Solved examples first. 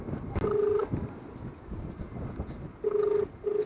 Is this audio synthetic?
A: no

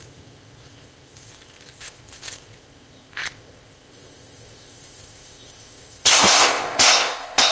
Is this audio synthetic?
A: yes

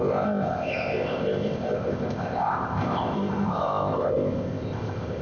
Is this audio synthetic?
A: yes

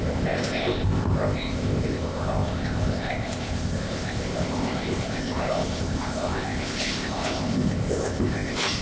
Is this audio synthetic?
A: yes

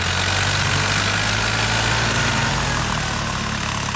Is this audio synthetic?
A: no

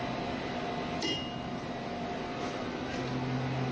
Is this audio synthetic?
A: no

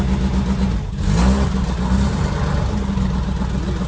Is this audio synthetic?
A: no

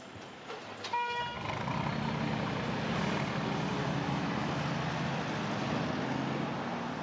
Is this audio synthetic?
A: no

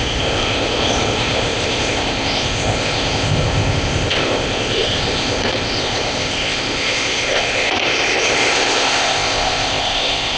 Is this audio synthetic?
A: yes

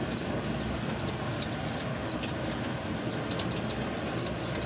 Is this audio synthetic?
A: no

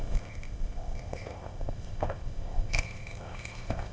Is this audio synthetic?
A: yes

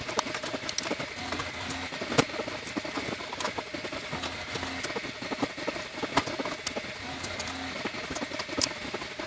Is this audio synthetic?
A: no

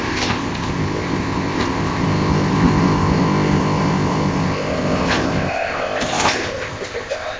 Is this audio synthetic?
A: yes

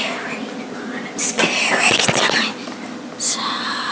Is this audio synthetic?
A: no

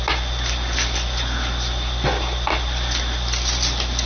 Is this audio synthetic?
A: no